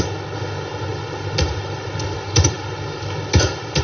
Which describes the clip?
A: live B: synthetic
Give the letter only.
A